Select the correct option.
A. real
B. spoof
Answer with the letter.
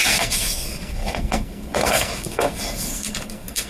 B